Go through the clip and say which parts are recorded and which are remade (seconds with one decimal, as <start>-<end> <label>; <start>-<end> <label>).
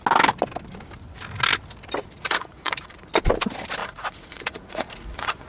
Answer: 0.0-2.0 recorded; 2.0-3.1 remade; 3.1-3.8 recorded; 3.8-5.5 remade